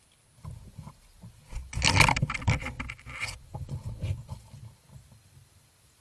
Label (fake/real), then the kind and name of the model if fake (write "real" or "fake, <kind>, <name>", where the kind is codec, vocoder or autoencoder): real